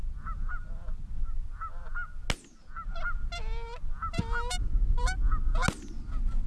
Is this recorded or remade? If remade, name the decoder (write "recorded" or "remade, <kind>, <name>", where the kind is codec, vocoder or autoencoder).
recorded